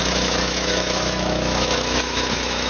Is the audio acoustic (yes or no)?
no